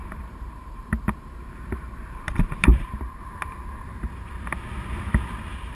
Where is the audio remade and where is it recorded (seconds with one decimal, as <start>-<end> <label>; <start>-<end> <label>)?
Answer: 0.0-2.3 remade; 2.3-2.7 recorded; 2.7-3.2 remade; 3.2-5.7 recorded